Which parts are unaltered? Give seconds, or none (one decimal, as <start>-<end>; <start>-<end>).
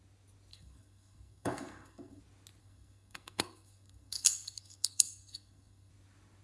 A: 0.0-0.5; 2.2-2.6; 5.9-6.4